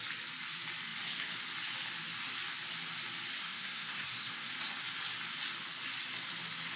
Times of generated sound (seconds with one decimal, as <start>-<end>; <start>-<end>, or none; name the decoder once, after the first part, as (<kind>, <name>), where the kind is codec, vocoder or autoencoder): 3.4-4.5 (codec, SNAC)